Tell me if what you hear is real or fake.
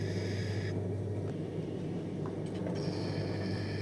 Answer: real